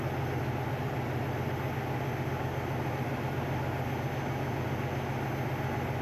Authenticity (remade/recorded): recorded